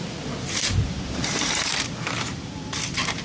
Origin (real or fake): fake